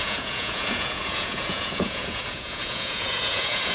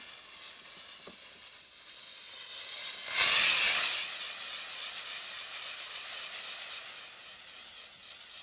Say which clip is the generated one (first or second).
first